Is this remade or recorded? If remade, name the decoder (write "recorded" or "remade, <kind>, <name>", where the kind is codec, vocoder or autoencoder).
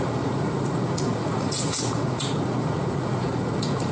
remade, vocoder, Vocos